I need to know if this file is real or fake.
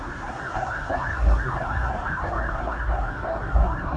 fake